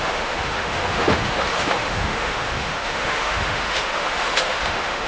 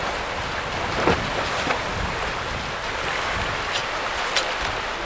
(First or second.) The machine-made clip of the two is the first